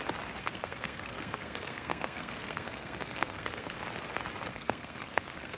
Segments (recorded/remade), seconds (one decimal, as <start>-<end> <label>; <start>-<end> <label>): 0.0-0.4 recorded; 0.4-3.8 remade; 3.8-4.5 recorded; 4.5-5.6 remade

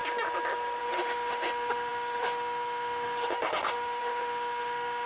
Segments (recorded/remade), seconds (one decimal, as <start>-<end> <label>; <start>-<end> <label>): 0.0-0.8 recorded; 0.8-5.1 remade

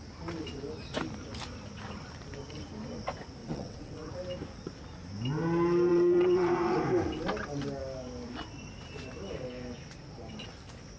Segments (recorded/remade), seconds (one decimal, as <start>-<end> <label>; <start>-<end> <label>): 0.0-3.4 recorded; 3.4-4.1 remade; 4.1-5.9 recorded; 5.9-6.5 remade; 6.5-11.0 recorded